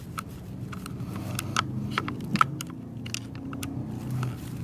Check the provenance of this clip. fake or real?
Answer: real